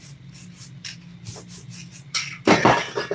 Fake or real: real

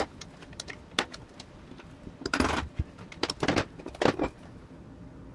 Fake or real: fake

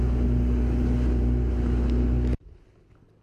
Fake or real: real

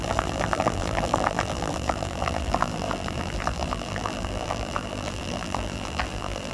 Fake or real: fake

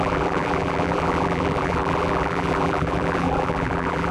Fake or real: fake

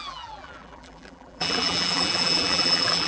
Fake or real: fake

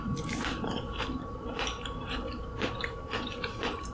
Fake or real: fake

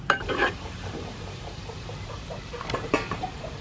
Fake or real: fake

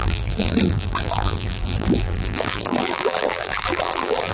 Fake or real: fake